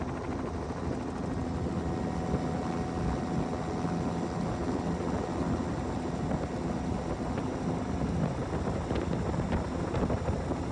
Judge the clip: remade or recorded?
recorded